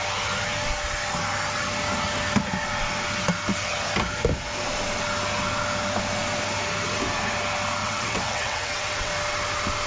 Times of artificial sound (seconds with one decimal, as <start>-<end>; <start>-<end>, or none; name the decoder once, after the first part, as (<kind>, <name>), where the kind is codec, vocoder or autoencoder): 7.8-9.1 (vocoder, WaveNeXt)